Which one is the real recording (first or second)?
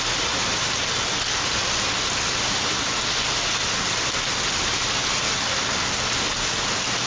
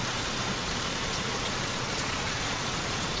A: first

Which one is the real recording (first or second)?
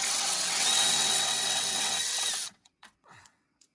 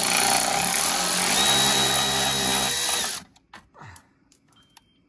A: second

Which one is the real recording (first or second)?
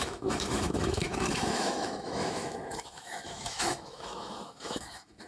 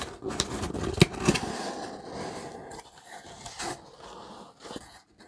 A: second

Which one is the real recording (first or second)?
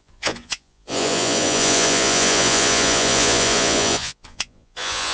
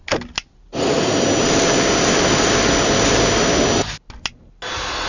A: second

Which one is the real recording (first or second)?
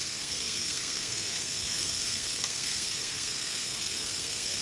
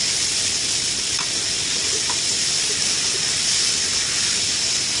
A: second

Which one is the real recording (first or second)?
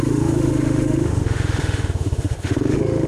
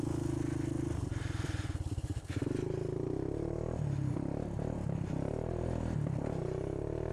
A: second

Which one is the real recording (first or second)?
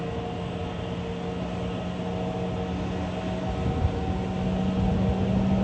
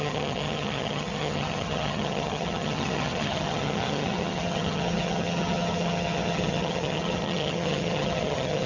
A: first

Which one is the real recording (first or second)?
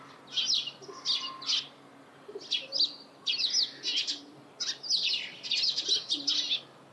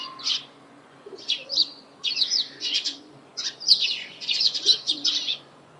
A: first